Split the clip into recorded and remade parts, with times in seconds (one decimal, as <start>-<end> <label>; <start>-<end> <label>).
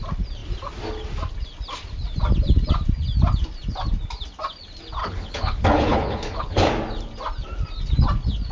0.0-5.0 recorded; 5.0-6.7 remade; 6.7-8.5 recorded